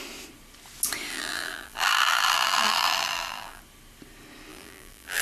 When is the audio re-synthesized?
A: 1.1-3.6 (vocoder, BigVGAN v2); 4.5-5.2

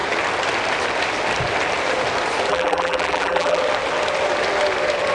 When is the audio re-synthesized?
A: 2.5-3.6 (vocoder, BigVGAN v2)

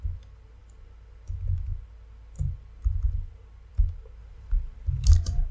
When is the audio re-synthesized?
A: 4.2-5.1 (vocoder, BigVGAN v2)